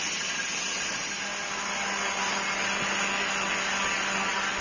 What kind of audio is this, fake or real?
real